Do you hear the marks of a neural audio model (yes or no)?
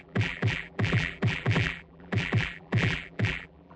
yes